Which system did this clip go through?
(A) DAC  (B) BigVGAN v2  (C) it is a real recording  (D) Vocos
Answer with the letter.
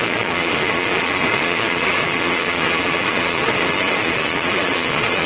D